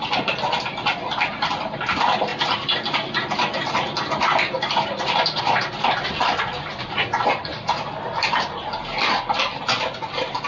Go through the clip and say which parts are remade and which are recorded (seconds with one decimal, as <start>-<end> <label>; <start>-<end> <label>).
0.0-10.5 recorded